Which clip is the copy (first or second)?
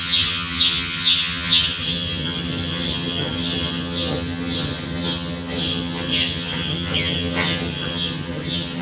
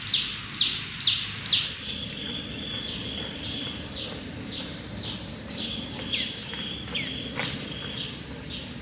first